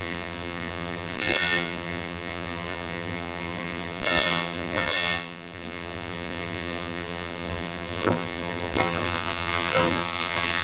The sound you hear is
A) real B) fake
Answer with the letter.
B